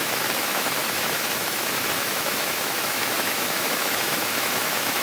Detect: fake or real fake